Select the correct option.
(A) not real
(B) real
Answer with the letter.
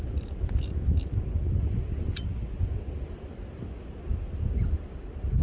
B